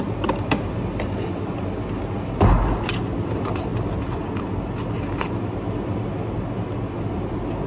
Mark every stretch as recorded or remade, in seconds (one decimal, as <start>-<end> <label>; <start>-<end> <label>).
0.0-7.7 recorded